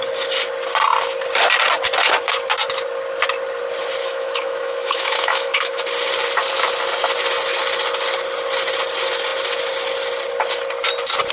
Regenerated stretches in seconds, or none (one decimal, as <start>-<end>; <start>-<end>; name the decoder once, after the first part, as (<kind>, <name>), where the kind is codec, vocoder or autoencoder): 4.0-5.8 (autoencoder, DAC-VAE)